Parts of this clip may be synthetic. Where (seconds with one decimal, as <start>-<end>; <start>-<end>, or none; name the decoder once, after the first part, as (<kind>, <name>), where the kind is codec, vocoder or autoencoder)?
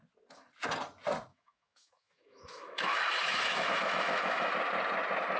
1.3-4.5 (autoencoder, DAC-VAE)